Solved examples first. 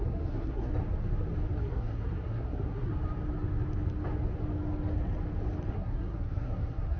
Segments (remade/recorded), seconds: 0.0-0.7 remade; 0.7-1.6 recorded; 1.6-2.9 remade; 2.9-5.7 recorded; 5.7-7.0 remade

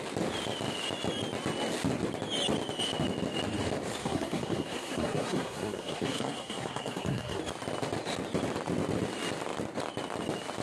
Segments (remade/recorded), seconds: 0.0-4.0 recorded; 4.0-7.4 remade; 7.4-10.6 recorded